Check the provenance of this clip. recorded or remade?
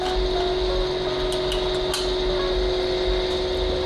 recorded